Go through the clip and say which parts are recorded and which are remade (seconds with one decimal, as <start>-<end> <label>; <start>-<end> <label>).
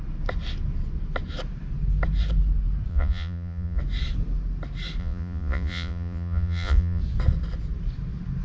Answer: 0.0-2.9 recorded; 2.9-3.8 remade; 3.8-5.0 recorded; 5.0-7.0 remade; 7.0-8.4 recorded